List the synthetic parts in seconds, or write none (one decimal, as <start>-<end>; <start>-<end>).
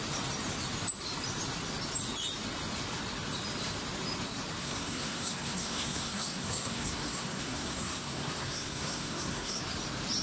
4.6-9.6